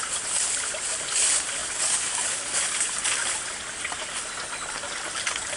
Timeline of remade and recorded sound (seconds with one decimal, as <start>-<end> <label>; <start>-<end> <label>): 0.0-1.6 recorded; 1.6-2.6 remade; 2.6-5.6 recorded